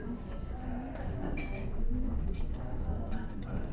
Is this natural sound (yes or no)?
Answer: no